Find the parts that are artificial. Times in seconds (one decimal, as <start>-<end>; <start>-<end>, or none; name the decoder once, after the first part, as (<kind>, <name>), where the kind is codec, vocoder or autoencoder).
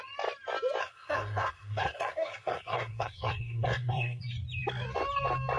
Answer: 0.8-4.2 (codec, SNAC)